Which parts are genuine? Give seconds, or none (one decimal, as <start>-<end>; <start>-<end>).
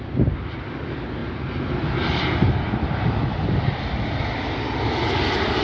0.0-5.6